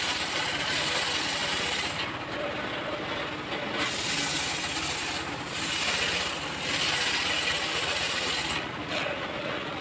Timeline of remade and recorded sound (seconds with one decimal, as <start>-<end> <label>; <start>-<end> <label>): 0.0-7.7 recorded; 7.7-9.8 remade